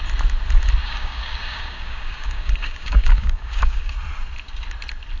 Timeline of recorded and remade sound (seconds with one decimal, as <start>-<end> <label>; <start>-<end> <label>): 0.0-0.8 recorded; 0.8-3.9 remade; 3.9-5.2 recorded